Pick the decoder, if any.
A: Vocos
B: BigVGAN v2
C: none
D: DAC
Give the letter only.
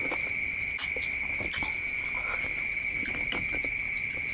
C